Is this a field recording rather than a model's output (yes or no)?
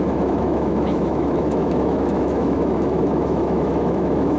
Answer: no